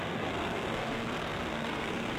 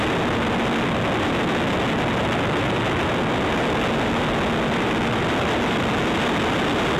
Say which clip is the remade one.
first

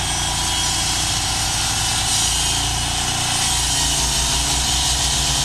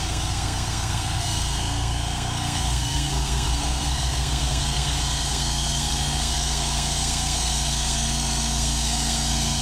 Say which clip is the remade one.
second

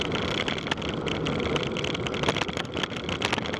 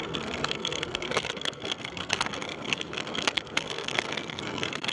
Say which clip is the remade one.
second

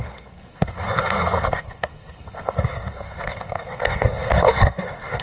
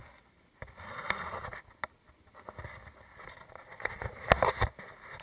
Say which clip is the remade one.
first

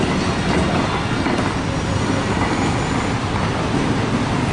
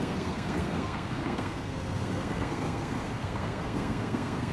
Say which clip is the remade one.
second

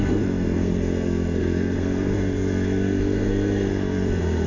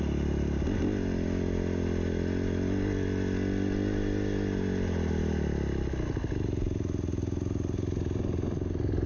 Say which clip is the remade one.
first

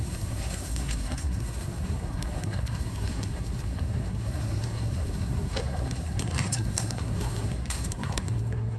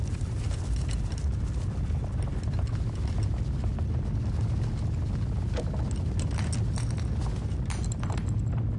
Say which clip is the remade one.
first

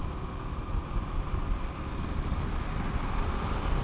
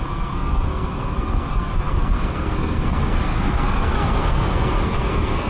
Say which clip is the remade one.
second